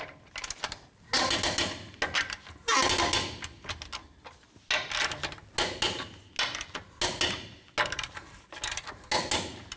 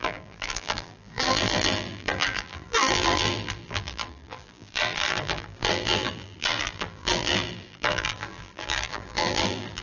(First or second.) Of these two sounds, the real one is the first